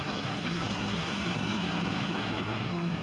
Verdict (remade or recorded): remade